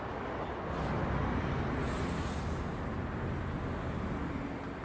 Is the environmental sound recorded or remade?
recorded